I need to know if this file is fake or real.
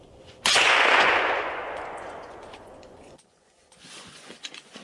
fake